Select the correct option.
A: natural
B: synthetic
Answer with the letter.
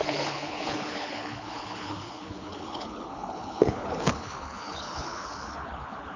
B